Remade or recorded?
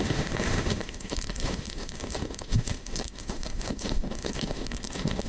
remade